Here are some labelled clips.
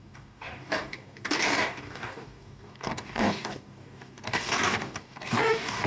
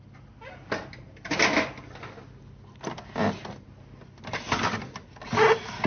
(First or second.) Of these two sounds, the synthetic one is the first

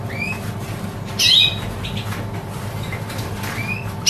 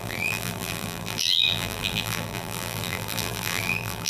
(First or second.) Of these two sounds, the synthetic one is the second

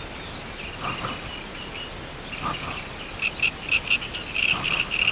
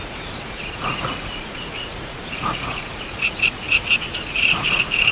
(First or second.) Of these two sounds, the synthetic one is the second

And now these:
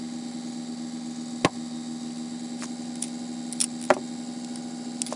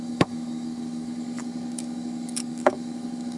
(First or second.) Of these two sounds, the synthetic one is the second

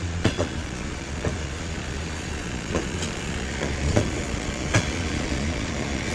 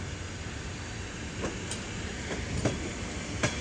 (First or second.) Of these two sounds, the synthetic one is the first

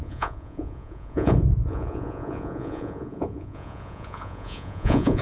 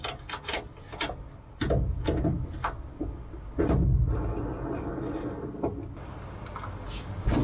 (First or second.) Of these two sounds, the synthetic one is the first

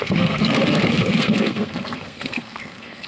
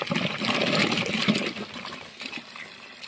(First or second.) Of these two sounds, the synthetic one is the first